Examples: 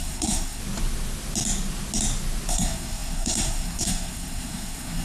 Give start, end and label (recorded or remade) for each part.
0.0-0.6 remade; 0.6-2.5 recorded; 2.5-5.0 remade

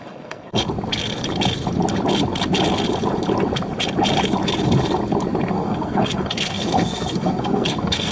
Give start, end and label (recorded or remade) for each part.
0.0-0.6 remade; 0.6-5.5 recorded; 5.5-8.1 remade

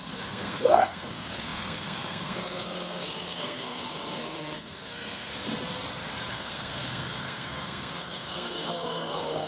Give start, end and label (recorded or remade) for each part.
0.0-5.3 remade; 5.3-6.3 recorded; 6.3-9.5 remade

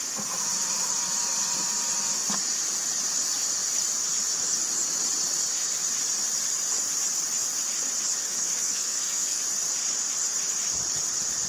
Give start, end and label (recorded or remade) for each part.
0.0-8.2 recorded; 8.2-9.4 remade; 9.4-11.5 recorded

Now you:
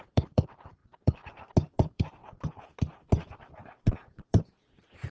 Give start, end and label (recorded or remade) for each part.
0.0-2.2 remade; 2.2-3.8 recorded; 3.8-5.1 remade

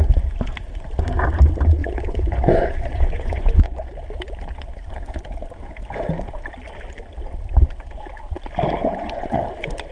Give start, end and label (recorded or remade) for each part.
0.0-1.8 recorded; 1.8-3.9 remade; 3.9-8.8 recorded; 8.8-9.4 remade; 9.4-9.9 recorded

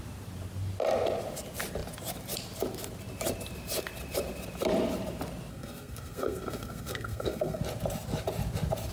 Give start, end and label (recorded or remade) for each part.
0.0-5.5 recorded; 5.5-7.6 remade; 7.6-8.9 recorded